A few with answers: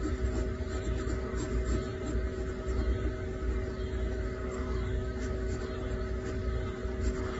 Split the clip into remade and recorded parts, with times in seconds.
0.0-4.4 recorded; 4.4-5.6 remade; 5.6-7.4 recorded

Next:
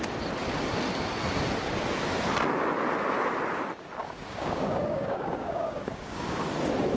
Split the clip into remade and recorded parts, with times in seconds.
0.0-4.0 recorded; 4.0-6.4 remade; 6.4-7.0 recorded

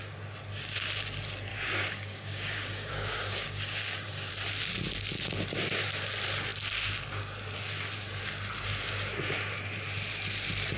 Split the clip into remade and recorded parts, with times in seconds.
0.0-1.5 recorded; 1.5-4.3 remade; 4.3-10.8 recorded

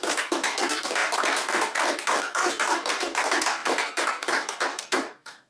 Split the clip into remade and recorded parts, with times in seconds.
0.0-5.5 remade

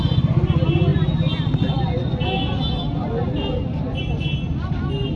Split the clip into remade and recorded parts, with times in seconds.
0.0-5.2 recorded

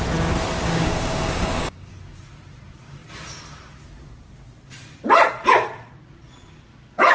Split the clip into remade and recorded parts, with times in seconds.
0.0-0.6 recorded; 0.6-1.9 remade; 1.9-7.1 recorded

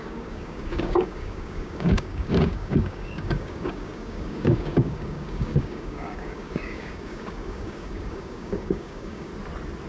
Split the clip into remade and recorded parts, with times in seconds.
0.0-9.3 remade; 9.3-9.9 recorded

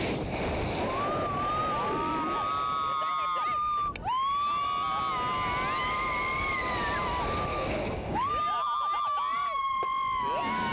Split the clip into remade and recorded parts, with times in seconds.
0.0-7.5 recorded; 7.5-8.3 remade; 8.3-10.7 recorded